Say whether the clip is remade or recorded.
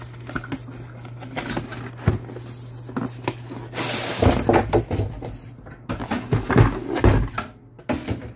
recorded